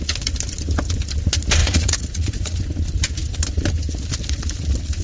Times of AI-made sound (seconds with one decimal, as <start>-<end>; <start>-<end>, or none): 1.6-2.6